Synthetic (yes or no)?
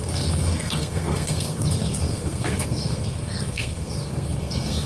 yes